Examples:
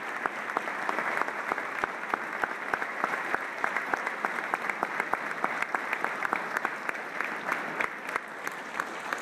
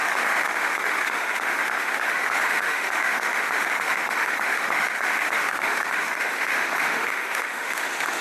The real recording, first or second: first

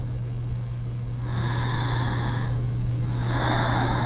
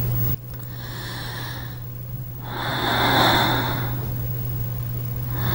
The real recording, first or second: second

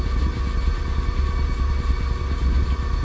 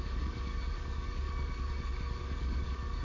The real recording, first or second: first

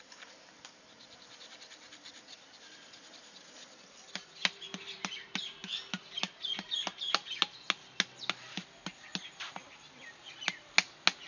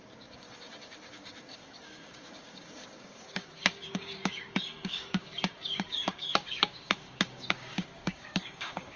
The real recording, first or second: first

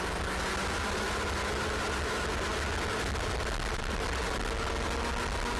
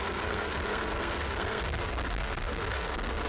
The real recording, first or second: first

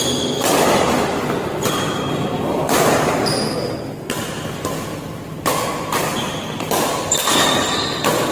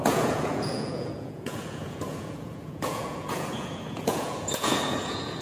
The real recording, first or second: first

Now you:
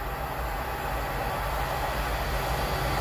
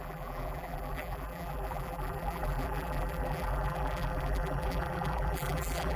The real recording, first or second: first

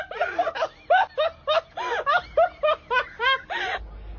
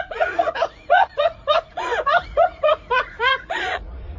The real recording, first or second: first